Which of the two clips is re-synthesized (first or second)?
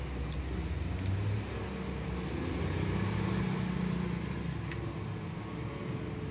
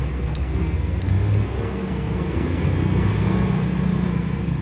second